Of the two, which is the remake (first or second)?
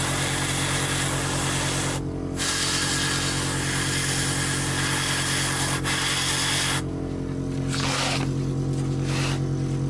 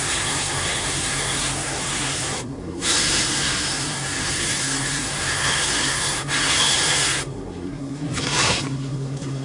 second